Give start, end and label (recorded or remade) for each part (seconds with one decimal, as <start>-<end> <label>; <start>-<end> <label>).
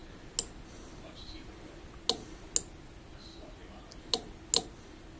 0.0-3.1 recorded; 3.1-3.6 remade; 3.6-5.2 recorded